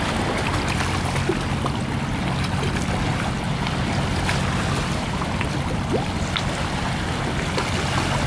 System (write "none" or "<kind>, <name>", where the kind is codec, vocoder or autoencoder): none